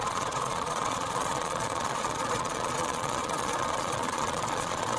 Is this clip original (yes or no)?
no